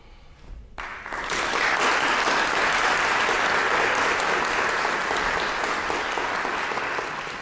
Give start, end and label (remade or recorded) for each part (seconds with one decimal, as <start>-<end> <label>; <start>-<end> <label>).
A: 0.0-7.4 recorded